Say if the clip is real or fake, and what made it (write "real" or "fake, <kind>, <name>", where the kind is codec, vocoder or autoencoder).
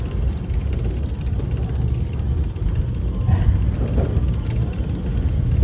real